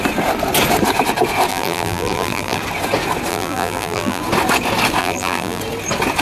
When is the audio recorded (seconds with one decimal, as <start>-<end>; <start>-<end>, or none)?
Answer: 0.0-1.5; 2.6-3.3; 4.2-5.0; 5.6-6.2

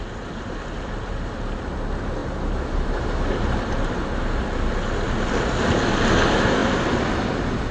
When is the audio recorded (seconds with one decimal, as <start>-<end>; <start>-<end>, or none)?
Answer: 0.0-2.2; 4.4-7.7

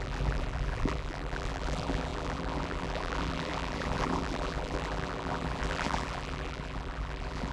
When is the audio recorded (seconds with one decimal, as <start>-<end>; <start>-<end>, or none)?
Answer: none

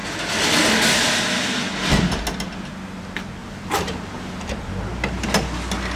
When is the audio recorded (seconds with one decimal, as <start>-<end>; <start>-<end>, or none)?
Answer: 0.0-3.4; 4.5-6.0

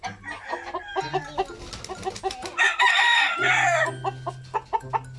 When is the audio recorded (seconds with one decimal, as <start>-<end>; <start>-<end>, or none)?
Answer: 0.0-5.2